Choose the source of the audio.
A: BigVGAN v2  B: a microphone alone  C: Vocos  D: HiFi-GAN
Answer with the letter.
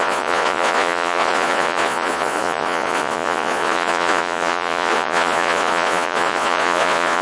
C